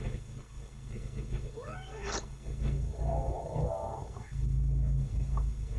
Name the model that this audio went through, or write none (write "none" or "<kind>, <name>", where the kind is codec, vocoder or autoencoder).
codec, SNAC